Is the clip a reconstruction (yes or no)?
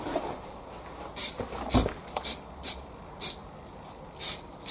no